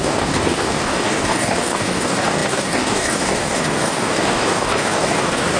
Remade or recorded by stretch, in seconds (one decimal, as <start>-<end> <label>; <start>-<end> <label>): 0.0-5.6 remade